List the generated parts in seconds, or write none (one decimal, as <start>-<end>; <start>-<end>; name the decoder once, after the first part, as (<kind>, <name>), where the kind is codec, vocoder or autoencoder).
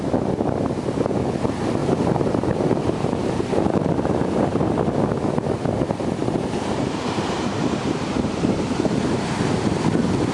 1.8-5.2 (vocoder, BigVGAN v2); 6.2-9.4